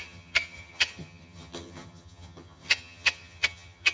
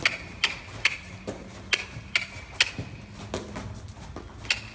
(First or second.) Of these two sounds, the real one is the second